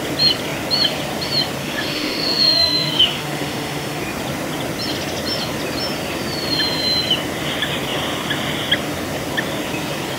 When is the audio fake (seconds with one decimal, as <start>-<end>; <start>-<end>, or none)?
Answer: 1.6-4.0

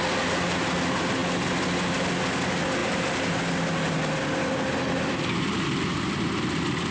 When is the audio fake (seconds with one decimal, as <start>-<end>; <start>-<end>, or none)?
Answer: 2.8-3.4

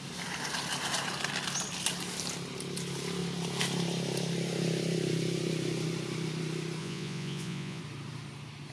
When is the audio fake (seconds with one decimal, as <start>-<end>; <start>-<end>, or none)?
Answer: 6.8-7.8

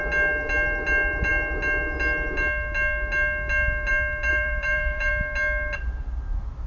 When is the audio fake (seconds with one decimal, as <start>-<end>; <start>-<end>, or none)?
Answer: 4.3-5.1

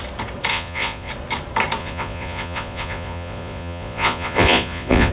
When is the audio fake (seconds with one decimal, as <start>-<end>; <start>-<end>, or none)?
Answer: 0.5-1.1; 1.8-5.1

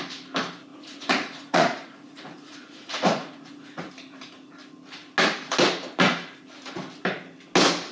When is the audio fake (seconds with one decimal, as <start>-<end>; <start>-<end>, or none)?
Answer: 0.7-3.9

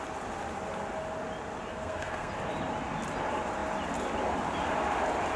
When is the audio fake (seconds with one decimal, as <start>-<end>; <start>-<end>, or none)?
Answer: 1.7-2.3

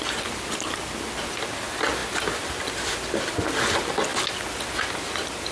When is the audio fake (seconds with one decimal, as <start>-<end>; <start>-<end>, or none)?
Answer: none